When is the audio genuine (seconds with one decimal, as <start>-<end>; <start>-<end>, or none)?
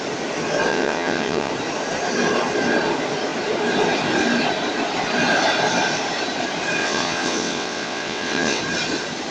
0.0-0.7; 1.5-6.8; 8.6-9.3